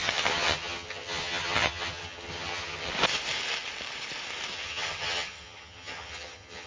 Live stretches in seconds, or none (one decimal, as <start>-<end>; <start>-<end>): 2.9-4.5